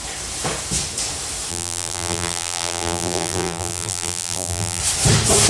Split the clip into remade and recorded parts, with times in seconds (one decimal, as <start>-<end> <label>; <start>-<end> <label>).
0.0-1.5 recorded; 1.5-4.8 remade; 4.8-5.5 recorded